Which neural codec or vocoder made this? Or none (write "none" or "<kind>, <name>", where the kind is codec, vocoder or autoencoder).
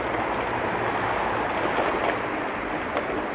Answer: none